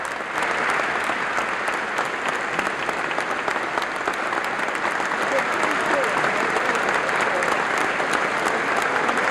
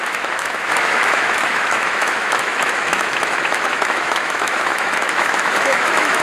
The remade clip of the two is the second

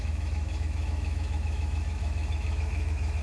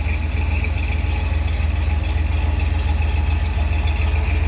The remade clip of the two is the first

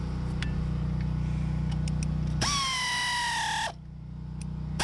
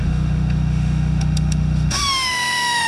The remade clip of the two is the second